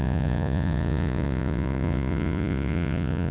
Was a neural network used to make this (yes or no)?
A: yes